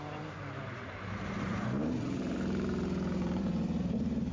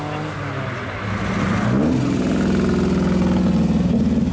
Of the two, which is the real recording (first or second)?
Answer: second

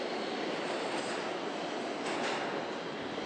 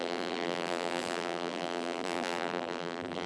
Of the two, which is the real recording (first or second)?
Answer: first